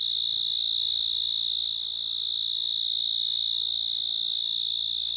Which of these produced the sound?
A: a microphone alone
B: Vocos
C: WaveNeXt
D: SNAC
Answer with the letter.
A